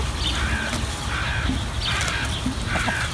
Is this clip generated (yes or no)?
no